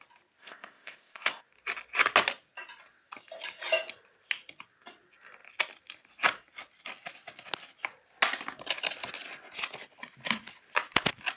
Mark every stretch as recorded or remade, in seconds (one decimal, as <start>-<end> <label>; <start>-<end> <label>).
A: 0.0-0.4 recorded; 0.4-1.4 remade; 1.4-11.4 recorded